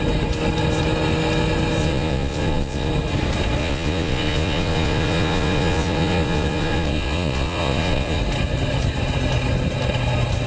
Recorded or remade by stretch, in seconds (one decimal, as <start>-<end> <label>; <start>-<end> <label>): 0.0-1.8 recorded; 1.8-2.9 remade; 2.9-3.6 recorded; 3.6-8.2 remade; 8.2-10.5 recorded

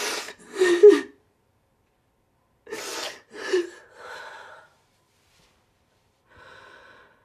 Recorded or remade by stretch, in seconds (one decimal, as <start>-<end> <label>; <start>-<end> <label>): 0.0-0.8 recorded; 0.8-1.6 remade; 1.6-2.9 recorded; 2.9-5.0 remade; 5.0-7.2 recorded

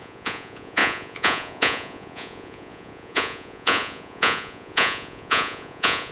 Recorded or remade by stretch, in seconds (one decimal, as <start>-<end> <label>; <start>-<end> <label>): 0.0-6.1 remade

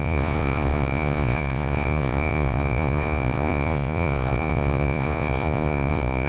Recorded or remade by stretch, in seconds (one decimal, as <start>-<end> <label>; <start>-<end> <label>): 0.0-6.3 remade